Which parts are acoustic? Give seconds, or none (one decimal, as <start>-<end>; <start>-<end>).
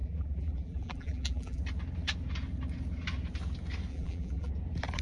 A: 1.6-3.9; 4.5-5.0